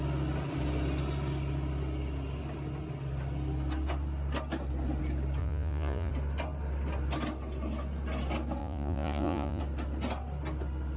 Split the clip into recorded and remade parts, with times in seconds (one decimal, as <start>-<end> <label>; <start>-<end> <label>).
0.0-5.4 recorded; 5.4-6.1 remade; 6.1-8.6 recorded; 8.6-9.6 remade; 9.6-11.0 recorded